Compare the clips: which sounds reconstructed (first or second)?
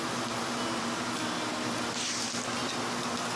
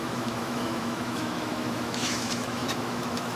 second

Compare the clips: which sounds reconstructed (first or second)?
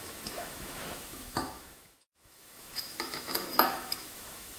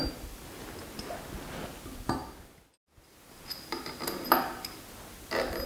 first